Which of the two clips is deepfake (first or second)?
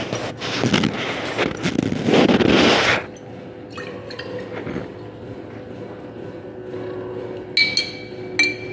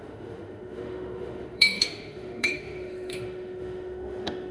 second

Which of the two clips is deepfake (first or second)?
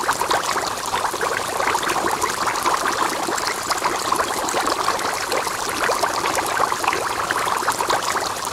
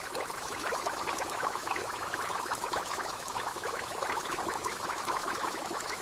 second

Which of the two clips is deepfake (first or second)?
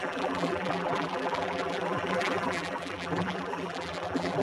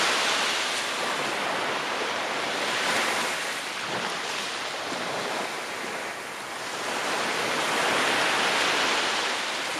first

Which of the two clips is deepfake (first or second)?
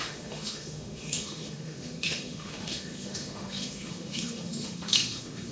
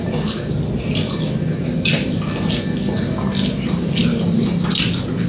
first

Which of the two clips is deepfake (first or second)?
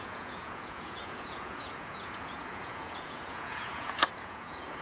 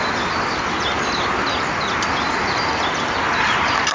first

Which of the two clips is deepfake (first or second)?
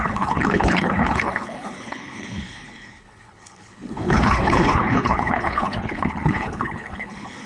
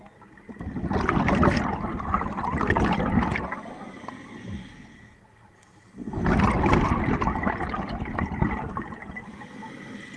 first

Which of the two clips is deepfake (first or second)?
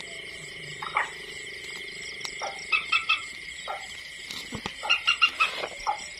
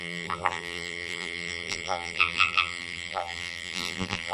second